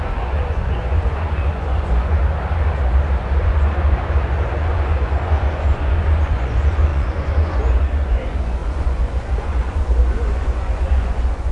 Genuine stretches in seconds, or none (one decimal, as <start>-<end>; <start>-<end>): 2.2-3.4